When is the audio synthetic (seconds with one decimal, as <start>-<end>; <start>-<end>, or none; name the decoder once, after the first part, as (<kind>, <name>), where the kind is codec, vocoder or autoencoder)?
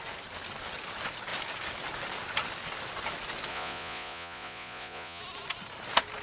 3.5-5.2 (vocoder, Vocos)